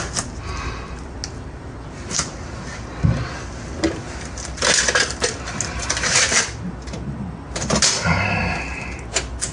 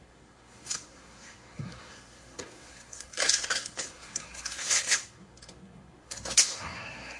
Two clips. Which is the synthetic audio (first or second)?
second